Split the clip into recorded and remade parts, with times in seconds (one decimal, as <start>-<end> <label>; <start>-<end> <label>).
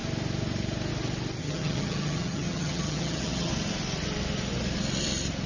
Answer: 0.0-1.4 recorded; 1.4-3.5 remade; 3.5-5.5 recorded